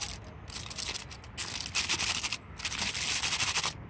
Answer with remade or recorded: recorded